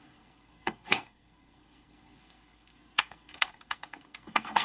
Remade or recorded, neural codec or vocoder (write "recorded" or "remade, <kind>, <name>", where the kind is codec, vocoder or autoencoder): remade, codec, SNAC